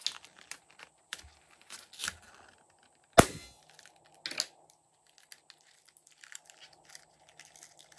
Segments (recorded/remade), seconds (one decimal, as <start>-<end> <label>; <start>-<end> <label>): 0.0-8.0 recorded